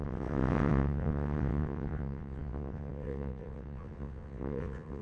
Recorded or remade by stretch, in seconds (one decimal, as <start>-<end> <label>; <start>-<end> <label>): 0.0-5.0 remade